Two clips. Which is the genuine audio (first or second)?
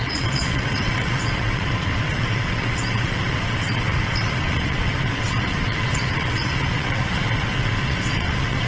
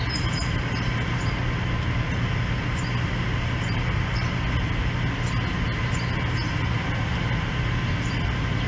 second